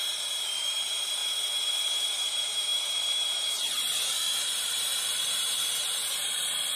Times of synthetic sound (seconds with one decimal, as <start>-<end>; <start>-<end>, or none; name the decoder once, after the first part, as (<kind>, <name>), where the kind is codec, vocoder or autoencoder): 0.0-1.2 (vocoder, BigVGAN v2); 2.3-6.8